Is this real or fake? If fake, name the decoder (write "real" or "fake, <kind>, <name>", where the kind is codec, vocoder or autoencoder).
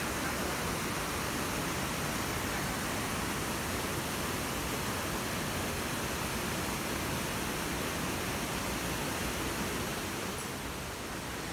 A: real